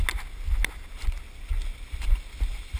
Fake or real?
real